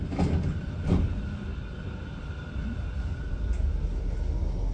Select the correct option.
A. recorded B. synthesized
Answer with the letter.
A